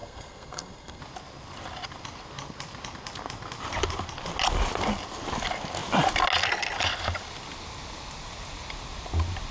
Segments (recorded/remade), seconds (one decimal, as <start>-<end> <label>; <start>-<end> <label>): 0.0-1.0 remade; 1.0-9.5 recorded